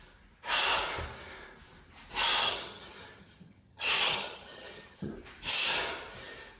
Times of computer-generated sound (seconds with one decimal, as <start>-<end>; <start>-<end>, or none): 2.4-5.1